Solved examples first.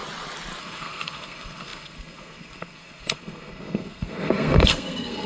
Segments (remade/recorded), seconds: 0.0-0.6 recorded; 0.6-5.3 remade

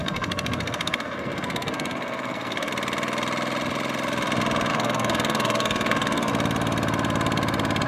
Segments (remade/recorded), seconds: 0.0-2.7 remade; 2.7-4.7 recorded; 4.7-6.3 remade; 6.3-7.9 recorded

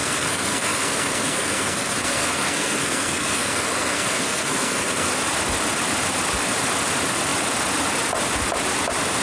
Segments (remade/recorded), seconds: 0.0-5.1 remade; 5.1-9.2 recorded

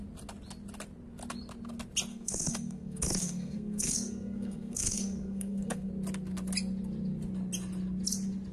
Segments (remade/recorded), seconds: 0.0-2.1 recorded; 2.1-5.9 remade; 5.9-8.5 recorded